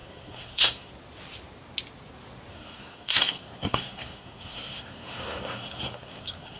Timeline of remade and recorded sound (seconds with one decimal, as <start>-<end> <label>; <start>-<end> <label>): 0.0-0.9 remade; 0.9-2.5 recorded; 2.5-6.6 remade